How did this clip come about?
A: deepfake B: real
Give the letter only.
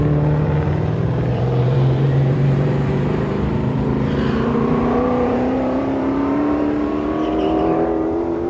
A